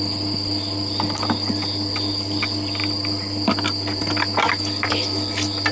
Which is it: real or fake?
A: real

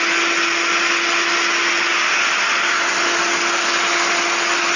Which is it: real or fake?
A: real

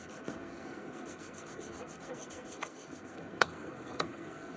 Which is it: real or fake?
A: fake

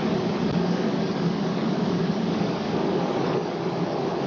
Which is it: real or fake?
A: fake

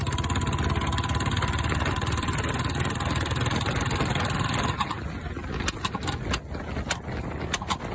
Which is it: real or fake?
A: real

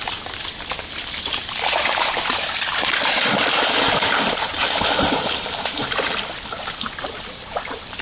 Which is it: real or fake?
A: fake